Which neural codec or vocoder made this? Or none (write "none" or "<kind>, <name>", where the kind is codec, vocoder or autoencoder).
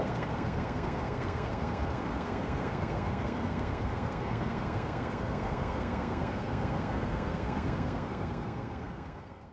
codec, SNAC